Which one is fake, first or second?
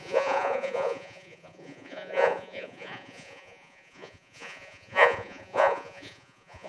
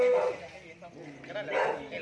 first